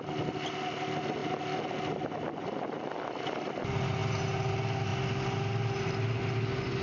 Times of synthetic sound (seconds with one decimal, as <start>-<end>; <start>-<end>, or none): none